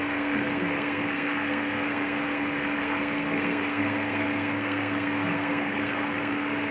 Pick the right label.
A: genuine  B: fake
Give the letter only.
B